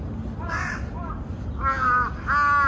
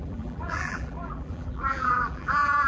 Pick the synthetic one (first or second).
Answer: second